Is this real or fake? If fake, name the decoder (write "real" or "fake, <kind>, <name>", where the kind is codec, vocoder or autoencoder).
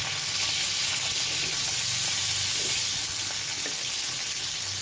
real